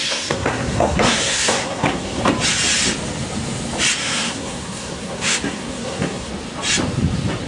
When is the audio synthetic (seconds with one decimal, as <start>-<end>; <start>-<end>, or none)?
0.0-2.2; 4.0-6.3